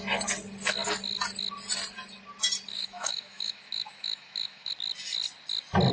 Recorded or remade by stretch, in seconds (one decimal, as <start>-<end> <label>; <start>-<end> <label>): 0.0-2.7 recorded; 2.7-4.7 remade; 4.7-5.9 recorded